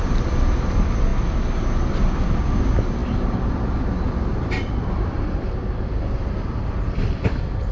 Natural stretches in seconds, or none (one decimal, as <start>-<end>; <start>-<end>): 1.1-1.9; 3.0-4.4